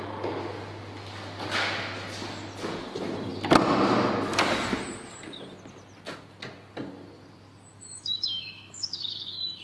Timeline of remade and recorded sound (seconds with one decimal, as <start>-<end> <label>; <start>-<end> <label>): 0.0-7.7 recorded; 7.7-9.6 remade